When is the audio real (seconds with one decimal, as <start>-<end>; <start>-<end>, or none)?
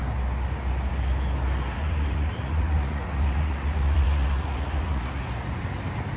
0.0-1.8; 5.2-6.2